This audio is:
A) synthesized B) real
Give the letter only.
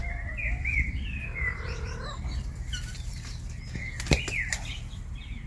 A